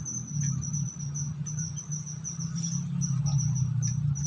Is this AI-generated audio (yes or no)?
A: no